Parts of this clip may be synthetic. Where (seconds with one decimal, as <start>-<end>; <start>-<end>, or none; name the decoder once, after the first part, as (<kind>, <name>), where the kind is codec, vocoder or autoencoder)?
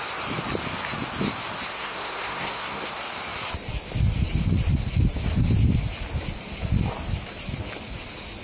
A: 1.7-2.9 (codec, SNAC)